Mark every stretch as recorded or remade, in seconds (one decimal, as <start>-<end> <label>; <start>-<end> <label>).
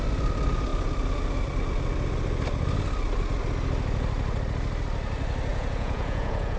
0.0-5.5 recorded; 5.5-6.6 remade